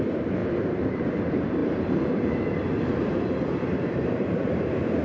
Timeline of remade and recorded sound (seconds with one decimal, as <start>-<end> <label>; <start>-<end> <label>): 0.0-5.0 remade